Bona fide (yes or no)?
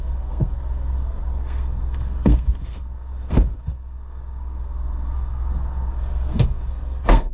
no